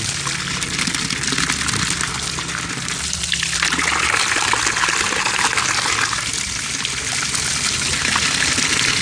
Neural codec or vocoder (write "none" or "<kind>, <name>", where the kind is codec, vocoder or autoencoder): none